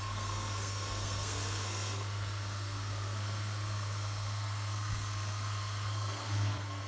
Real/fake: fake